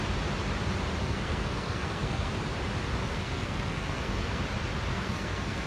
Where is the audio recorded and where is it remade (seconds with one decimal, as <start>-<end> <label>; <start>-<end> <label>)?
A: 0.0-1.0 recorded; 1.0-2.3 remade; 2.3-3.0 recorded; 3.0-4.4 remade; 4.4-4.9 recorded; 4.9-5.7 remade